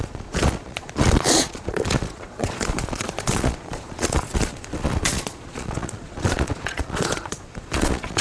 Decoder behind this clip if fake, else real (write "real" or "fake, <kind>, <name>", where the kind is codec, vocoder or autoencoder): fake, vocoder, Vocos